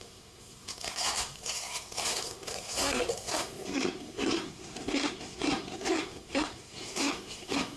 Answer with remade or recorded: remade